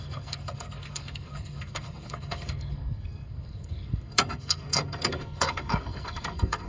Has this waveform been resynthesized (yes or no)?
yes